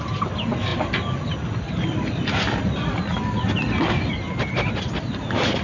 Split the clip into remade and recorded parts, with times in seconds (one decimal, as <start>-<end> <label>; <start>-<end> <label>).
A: 0.0-5.6 recorded